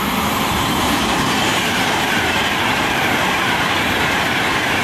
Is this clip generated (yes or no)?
yes